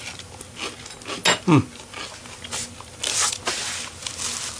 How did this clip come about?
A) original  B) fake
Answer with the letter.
A